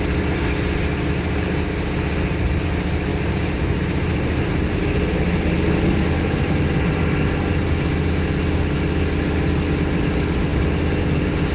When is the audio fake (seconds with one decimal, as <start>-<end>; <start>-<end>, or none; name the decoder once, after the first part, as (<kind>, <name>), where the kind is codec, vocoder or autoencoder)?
none

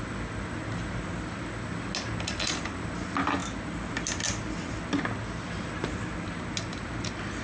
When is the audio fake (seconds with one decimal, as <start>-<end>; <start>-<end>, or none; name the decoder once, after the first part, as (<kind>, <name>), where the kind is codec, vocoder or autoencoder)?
none

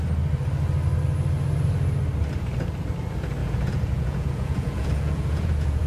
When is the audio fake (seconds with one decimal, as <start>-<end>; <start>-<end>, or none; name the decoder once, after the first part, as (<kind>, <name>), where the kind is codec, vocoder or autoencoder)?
3.4-5.9 (vocoder, Vocos)

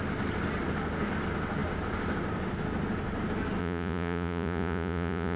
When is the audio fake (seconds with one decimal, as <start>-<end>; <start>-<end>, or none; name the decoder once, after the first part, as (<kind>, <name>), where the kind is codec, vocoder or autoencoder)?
3.6-5.4 (vocoder, Vocos)